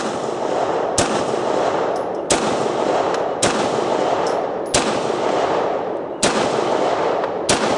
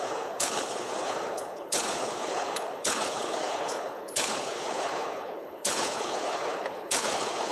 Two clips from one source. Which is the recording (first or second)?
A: first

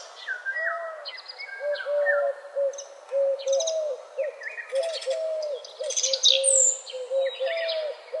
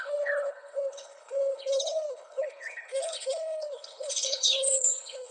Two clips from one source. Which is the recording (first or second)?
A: first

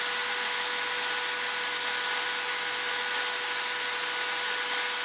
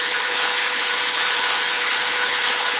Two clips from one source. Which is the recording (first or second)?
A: first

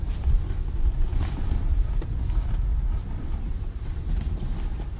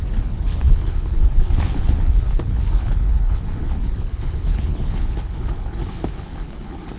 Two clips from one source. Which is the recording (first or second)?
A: first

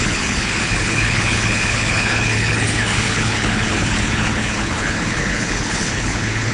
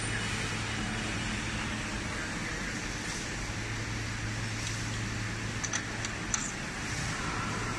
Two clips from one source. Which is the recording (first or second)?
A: second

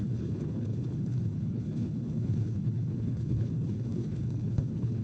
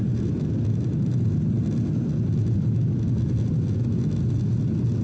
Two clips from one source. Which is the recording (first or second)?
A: second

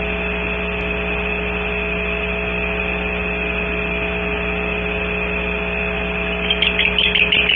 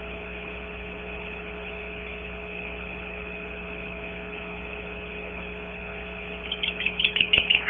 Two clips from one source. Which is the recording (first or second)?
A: first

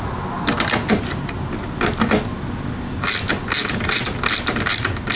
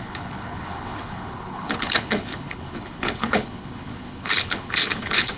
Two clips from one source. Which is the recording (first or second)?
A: first